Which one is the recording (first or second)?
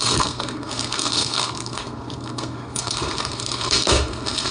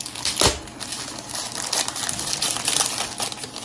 second